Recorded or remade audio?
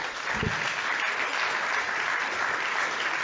recorded